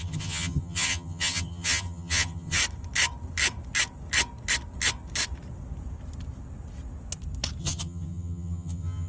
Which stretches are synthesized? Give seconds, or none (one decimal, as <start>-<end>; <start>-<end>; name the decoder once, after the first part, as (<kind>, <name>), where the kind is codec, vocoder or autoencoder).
0.0-2.6 (vocoder, HiFi-GAN); 7.6-9.1